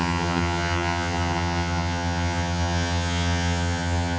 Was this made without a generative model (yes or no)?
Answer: no